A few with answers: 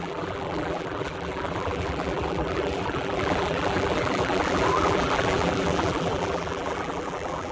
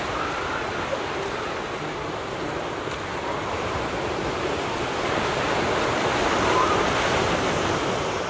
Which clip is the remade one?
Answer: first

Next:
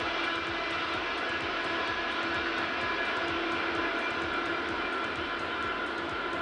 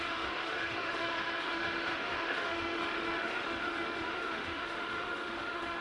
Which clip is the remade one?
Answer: second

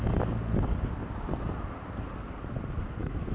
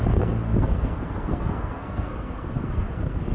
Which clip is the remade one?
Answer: second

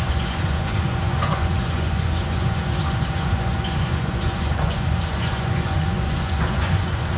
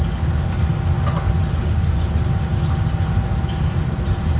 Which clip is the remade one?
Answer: first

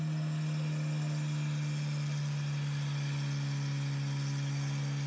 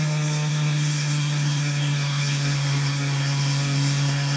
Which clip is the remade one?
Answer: second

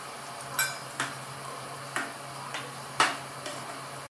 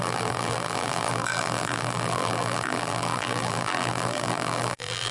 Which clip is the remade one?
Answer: second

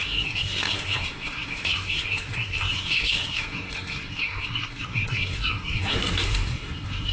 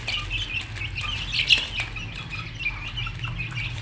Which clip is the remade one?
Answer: first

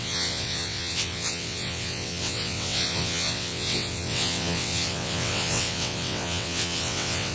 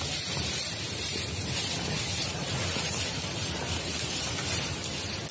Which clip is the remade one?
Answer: first